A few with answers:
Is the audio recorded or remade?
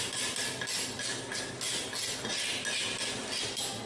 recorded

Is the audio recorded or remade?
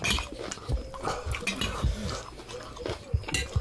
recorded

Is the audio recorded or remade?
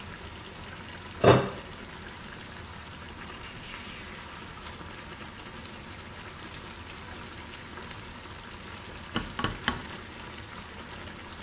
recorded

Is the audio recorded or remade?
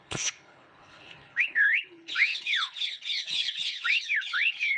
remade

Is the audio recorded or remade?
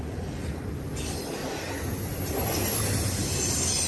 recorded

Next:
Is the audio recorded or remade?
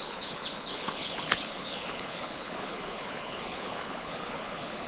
remade